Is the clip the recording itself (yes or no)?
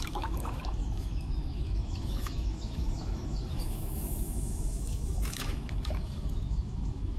no